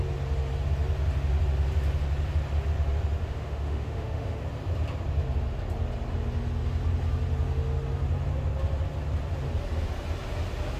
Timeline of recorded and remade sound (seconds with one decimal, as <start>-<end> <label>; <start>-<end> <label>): 0.0-3.2 recorded; 3.2-4.4 remade; 4.4-10.8 recorded